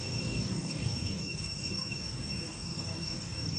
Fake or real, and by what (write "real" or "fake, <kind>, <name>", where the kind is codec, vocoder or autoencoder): fake, codec, DAC